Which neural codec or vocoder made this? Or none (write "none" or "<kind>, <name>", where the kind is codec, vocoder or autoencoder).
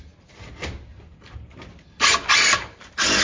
none